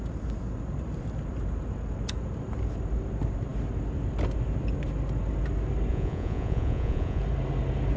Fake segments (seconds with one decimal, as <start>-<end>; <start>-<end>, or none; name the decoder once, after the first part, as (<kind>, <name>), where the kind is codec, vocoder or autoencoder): 5.9-7.2 (vocoder, Vocos)